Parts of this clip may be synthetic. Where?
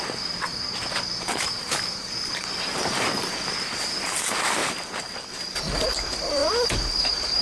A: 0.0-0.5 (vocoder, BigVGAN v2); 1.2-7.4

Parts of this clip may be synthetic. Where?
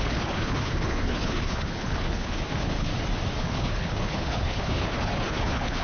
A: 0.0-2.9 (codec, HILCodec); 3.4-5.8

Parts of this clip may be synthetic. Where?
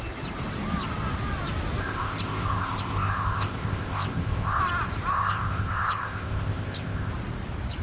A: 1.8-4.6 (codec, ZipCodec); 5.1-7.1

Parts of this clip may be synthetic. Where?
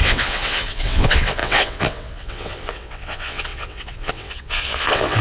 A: 0.0-5.2 (vocoder, WaveNeXt)